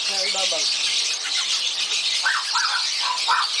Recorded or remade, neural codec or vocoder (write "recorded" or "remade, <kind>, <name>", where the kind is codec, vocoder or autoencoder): recorded